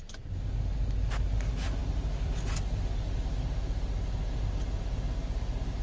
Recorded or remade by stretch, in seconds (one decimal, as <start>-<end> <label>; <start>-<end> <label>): 0.0-5.8 recorded